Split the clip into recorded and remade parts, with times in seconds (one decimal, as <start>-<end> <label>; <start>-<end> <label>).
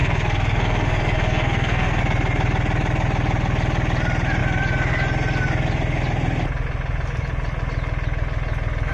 0.0-2.0 remade; 2.0-8.9 recorded